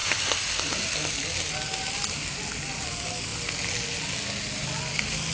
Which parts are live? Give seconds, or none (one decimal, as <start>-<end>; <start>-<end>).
0.0-5.3